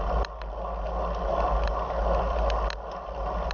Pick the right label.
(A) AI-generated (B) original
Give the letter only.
B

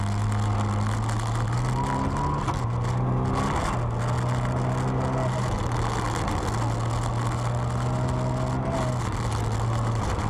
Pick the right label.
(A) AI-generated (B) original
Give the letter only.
B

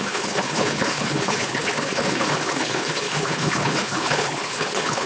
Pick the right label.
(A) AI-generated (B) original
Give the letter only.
A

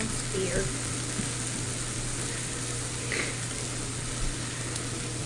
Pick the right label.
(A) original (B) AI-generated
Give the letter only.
A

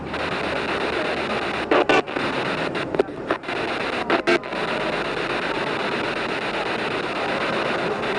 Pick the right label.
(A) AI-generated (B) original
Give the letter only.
B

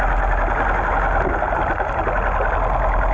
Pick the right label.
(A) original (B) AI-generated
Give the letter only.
A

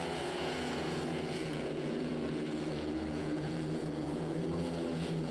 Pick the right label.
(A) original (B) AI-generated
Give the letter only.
B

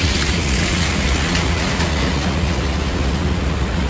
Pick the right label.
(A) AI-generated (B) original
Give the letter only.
A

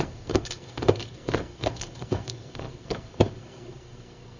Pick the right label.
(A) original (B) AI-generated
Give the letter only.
B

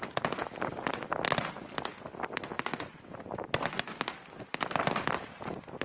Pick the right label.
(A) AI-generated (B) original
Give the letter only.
B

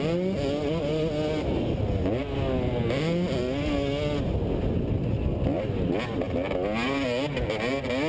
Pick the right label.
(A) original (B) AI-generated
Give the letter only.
A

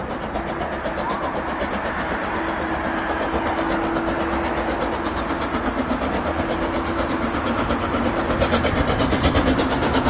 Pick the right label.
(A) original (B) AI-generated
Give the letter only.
A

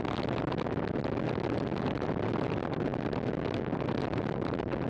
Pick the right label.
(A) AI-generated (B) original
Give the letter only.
B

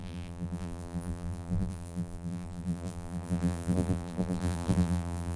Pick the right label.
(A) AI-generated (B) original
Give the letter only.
A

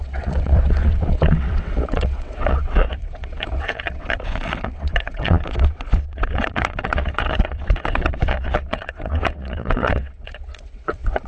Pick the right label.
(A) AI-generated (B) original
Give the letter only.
A